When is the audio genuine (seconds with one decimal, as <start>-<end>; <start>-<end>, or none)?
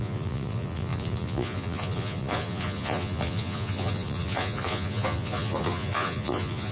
none